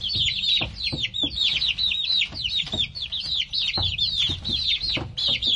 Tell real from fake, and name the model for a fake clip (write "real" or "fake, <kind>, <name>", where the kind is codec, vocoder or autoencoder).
real